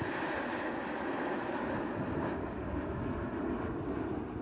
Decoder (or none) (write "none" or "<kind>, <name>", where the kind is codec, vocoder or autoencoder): none